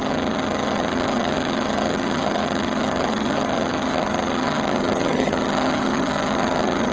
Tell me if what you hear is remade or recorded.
remade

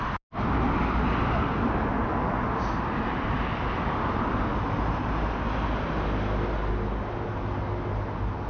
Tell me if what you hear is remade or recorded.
recorded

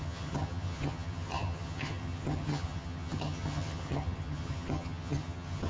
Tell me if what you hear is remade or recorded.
remade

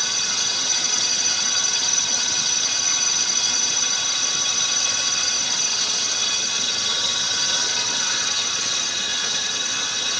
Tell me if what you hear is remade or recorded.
remade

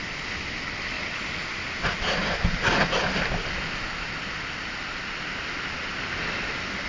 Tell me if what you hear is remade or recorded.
recorded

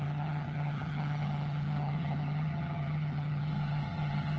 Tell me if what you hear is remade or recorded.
remade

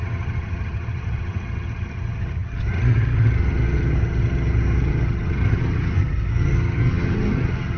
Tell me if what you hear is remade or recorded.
remade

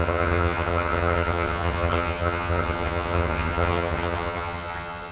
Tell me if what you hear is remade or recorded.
remade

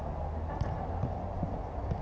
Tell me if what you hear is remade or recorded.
recorded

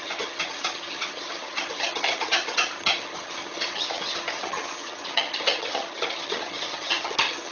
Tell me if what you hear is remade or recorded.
remade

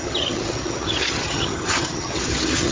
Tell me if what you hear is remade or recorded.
remade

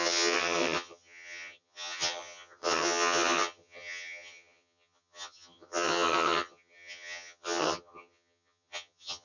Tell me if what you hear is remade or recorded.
remade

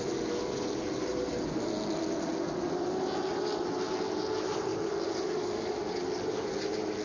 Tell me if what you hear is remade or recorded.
recorded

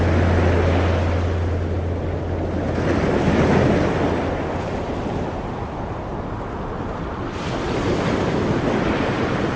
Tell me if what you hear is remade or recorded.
recorded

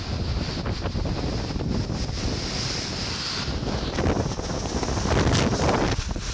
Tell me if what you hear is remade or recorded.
recorded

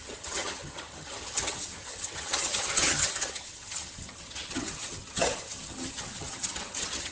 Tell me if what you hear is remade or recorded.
remade